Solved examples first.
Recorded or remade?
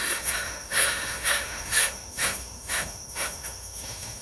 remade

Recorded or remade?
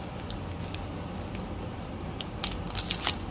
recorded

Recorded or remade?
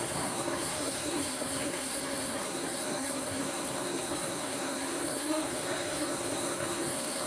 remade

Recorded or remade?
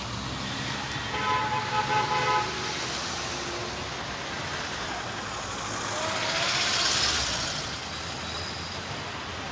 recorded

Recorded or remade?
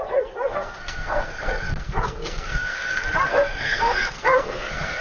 remade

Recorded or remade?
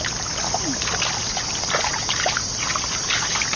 recorded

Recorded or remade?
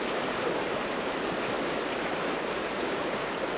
recorded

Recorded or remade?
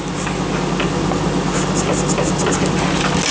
recorded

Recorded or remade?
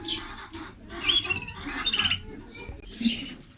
recorded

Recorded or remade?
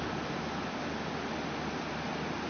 recorded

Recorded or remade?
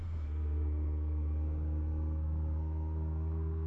remade